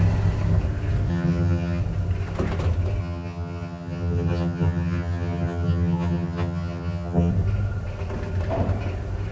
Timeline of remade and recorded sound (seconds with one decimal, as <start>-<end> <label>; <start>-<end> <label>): 0.0-1.1 recorded; 1.1-1.8 remade; 1.8-3.0 recorded; 3.0-7.3 remade; 7.3-9.3 recorded